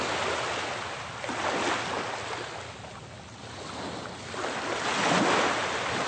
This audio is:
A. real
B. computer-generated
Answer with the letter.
A